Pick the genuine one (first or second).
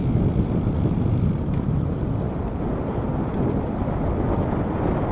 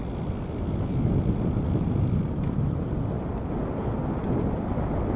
second